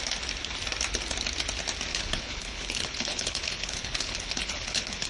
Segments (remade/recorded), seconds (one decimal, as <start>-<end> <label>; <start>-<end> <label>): 0.0-1.9 recorded; 1.9-5.1 remade